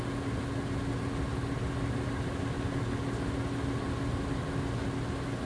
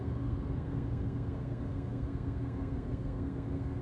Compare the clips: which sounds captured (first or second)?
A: first